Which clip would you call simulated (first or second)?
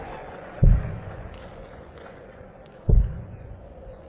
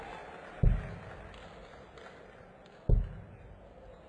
first